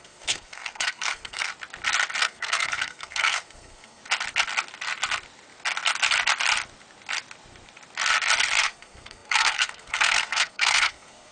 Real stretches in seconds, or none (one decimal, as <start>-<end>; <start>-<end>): 1.5-2.2; 4.0-8.6